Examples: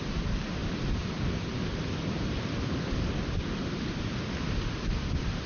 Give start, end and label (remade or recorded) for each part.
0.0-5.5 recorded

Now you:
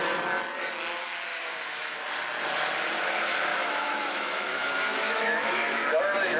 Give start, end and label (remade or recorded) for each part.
0.0-1.3 recorded; 1.3-2.1 remade; 2.1-3.5 recorded; 3.5-6.0 remade; 6.0-6.4 recorded

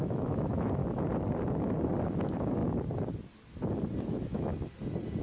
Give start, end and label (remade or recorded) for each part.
0.0-0.8 remade; 0.8-2.2 recorded; 2.2-2.6 remade; 2.6-4.1 recorded; 4.1-4.5 remade; 4.5-5.2 recorded

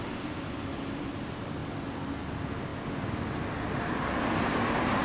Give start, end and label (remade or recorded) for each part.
0.0-5.0 recorded

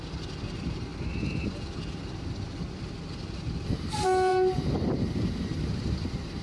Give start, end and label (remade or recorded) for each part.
0.0-4.3 recorded; 4.3-5.8 remade; 5.8-6.4 recorded

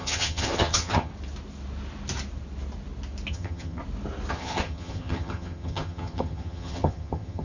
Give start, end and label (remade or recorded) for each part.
0.0-1.1 remade; 1.1-3.3 recorded; 3.3-3.8 remade; 3.8-4.3 recorded; 4.3-7.4 remade